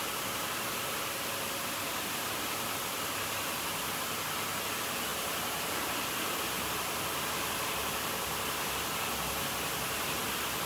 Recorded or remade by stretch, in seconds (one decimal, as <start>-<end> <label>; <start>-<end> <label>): 0.0-0.8 remade; 0.8-5.1 recorded; 5.1-9.0 remade; 9.0-10.7 recorded